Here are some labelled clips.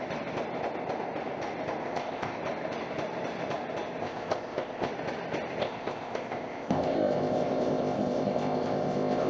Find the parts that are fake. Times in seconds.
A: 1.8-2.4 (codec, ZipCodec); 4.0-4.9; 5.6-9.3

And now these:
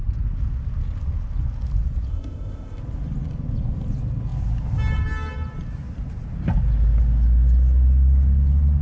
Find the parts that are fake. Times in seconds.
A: 2.1-2.8 (codec, ZipCodec)

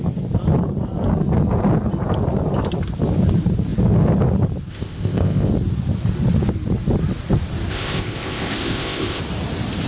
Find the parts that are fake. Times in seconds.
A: 4.7-5.5 (codec, ZipCodec); 7.7-9.2

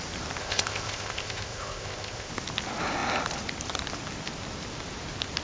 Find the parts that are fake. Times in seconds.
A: 0.4-2.3 (codec, ZipCodec)